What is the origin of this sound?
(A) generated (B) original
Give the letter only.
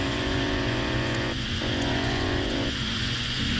A